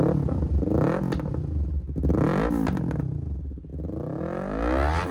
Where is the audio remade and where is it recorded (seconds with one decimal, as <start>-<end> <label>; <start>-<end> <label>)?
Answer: 0.0-5.1 recorded